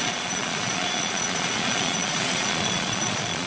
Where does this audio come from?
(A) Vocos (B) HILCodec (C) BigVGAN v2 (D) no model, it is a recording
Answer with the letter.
A